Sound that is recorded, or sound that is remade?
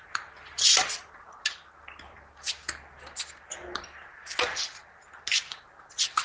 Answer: recorded